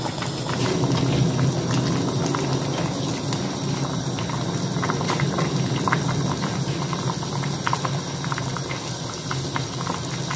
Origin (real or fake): real